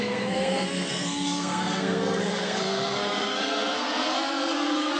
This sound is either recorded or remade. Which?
remade